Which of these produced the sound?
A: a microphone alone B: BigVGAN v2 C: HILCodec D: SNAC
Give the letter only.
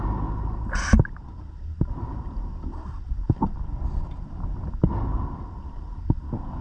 A